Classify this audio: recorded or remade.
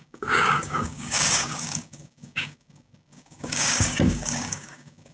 remade